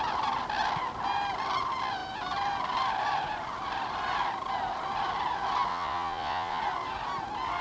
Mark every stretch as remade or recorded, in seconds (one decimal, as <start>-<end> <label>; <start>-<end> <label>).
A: 0.0-5.7 recorded; 5.7-6.6 remade; 6.6-7.6 recorded